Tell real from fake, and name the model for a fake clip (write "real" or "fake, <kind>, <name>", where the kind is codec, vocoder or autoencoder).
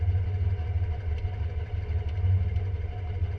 real